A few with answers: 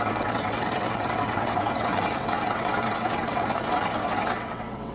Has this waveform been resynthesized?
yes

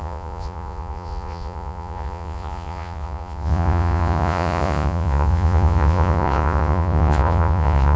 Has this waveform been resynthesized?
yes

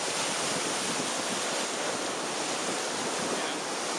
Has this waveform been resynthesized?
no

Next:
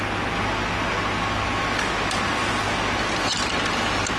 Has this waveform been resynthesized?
no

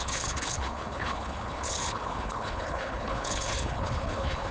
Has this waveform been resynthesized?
yes